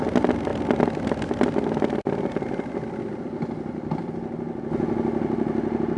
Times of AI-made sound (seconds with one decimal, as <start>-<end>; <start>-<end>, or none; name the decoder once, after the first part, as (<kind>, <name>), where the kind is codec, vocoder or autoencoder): none